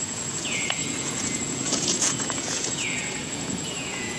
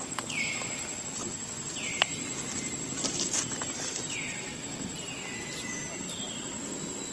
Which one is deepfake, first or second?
first